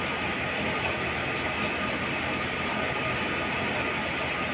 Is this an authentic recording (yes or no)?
yes